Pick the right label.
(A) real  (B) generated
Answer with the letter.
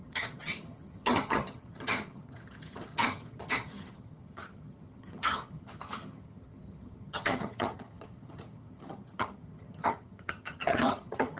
B